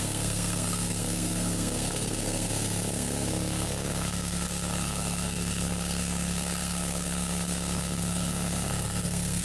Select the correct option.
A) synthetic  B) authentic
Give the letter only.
A